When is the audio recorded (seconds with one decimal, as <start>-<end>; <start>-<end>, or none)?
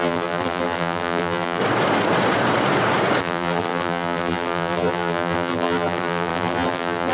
1.6-3.2